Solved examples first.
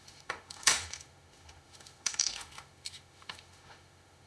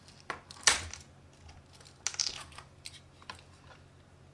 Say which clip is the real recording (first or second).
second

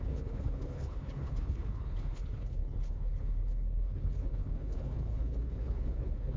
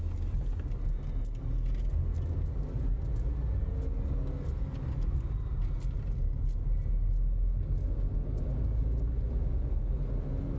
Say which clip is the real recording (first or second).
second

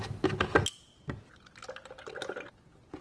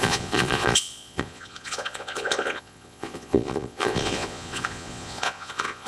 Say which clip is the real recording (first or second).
first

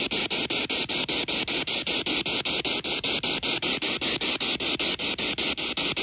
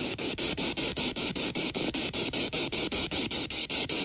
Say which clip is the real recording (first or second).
first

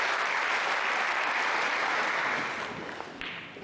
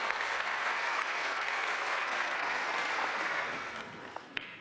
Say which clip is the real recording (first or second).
first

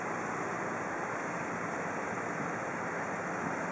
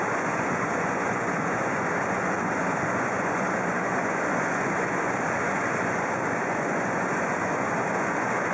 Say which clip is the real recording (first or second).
first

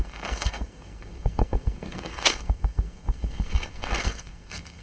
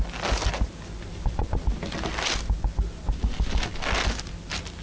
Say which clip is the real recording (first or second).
second